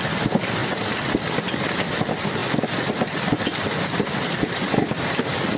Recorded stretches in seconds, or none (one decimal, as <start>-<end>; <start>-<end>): 0.0-5.6